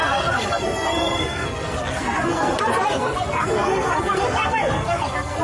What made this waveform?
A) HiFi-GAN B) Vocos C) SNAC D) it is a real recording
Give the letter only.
C